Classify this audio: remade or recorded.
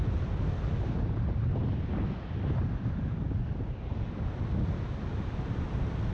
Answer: recorded